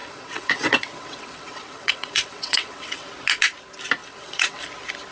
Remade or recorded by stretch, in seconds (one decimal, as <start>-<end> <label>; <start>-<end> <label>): 0.0-3.1 remade; 3.1-4.0 recorded; 4.0-4.6 remade; 4.6-5.1 recorded